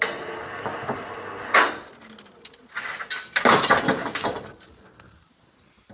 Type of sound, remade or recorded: recorded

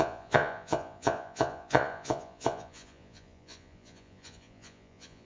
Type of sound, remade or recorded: remade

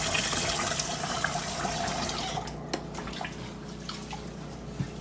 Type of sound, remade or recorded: recorded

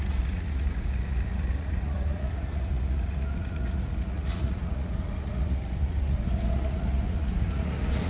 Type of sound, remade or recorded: remade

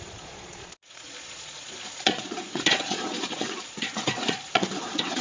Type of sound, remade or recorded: remade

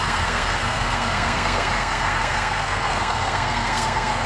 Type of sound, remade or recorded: remade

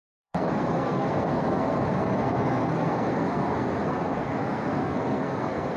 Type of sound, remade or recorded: remade